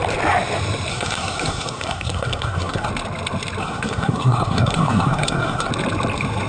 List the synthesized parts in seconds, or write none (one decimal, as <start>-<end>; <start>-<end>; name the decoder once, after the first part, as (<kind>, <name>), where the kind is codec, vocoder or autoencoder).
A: 0.9-2.9 (codec, SNAC); 3.6-5.7